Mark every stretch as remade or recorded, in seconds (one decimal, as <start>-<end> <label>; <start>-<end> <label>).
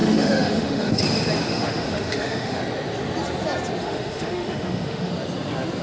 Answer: 0.0-1.0 remade; 1.0-1.5 recorded; 1.5-2.6 remade; 2.6-3.8 recorded; 3.8-5.1 remade; 5.1-5.8 recorded